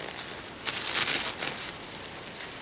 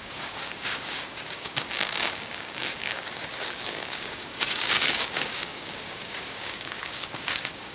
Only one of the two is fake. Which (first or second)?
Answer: second